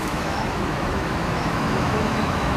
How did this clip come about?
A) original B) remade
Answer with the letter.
B